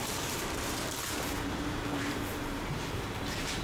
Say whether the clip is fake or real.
fake